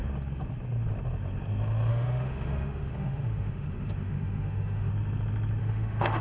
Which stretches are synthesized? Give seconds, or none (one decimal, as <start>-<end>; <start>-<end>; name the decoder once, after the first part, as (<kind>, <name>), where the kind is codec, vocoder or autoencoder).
1.9-4.9 (autoencoder, DAC-VAE); 5.6-6.2